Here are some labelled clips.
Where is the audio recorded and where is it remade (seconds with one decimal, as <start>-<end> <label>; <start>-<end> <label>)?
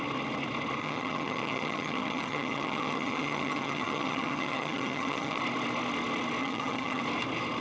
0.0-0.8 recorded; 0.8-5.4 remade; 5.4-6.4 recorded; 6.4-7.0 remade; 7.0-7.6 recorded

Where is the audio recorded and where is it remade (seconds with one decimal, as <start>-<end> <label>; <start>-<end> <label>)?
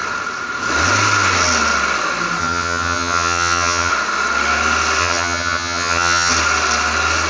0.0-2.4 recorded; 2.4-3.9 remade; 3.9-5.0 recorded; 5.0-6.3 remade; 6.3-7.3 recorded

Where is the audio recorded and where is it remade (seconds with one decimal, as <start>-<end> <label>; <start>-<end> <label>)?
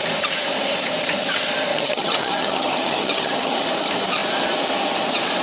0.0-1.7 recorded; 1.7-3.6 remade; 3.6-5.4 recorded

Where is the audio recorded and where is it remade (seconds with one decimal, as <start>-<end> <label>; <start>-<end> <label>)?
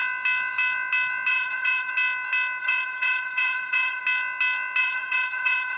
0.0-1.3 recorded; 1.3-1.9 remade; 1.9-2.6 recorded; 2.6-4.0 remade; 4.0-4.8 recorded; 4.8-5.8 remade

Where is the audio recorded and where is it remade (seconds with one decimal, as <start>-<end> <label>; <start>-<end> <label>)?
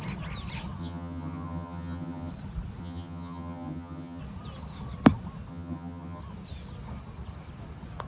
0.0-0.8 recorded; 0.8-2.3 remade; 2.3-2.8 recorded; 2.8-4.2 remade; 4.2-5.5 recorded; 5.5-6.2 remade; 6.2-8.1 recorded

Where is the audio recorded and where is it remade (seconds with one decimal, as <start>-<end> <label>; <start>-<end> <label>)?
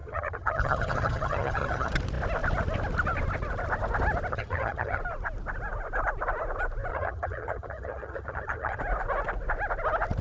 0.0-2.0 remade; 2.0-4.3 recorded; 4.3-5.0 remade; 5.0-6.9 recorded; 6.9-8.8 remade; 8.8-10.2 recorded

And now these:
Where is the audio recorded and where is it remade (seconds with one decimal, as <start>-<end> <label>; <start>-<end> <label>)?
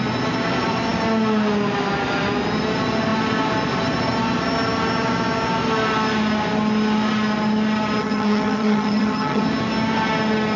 0.0-8.0 recorded; 8.0-9.4 remade; 9.4-10.6 recorded